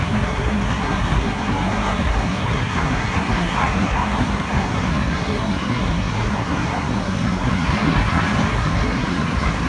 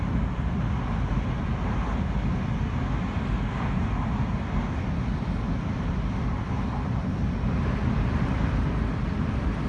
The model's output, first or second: first